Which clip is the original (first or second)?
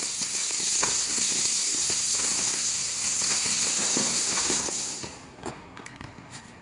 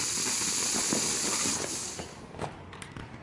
second